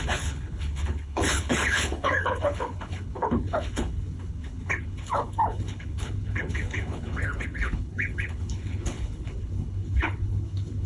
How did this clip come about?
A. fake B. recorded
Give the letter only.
A